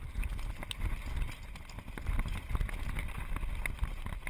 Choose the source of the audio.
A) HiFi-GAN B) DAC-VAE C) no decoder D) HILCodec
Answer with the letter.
C